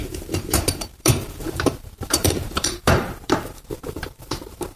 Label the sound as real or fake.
fake